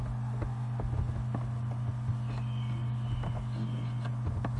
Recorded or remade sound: recorded